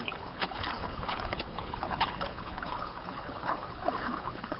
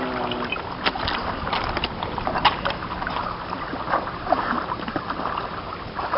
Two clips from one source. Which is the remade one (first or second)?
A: first